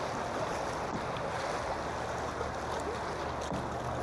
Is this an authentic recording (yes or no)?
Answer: yes